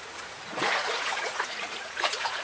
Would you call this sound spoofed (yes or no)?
yes